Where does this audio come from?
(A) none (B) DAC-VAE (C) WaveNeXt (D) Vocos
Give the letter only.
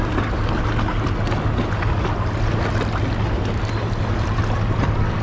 A